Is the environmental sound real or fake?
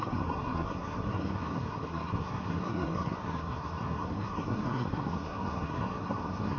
fake